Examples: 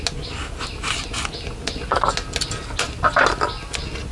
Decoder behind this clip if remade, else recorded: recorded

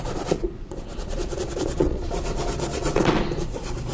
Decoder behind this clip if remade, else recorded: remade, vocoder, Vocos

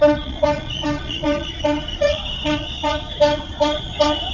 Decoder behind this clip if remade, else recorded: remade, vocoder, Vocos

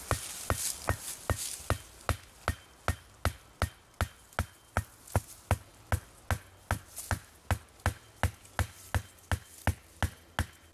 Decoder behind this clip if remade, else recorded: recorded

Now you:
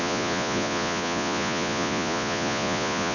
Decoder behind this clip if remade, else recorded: remade, vocoder, Vocos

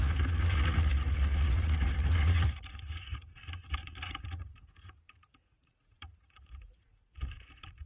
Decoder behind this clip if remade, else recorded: remade, vocoder, Vocos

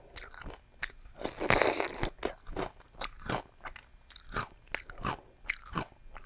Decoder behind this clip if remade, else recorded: recorded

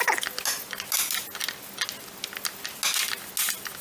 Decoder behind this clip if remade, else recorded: recorded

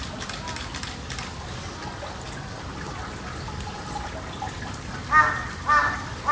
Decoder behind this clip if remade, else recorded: recorded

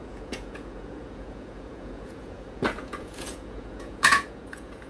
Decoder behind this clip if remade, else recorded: remade, vocoder, Vocos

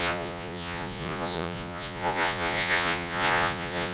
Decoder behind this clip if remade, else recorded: remade, vocoder, Vocos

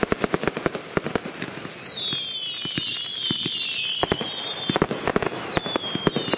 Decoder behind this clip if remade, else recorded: recorded